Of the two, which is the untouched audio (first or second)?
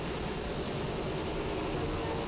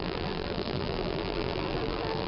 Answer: first